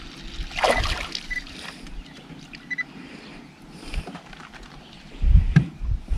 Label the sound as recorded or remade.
recorded